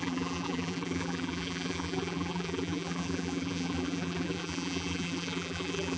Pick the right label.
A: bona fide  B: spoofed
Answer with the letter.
B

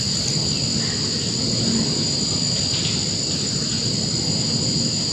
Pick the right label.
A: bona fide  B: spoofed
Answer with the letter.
A